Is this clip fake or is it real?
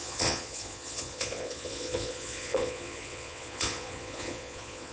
fake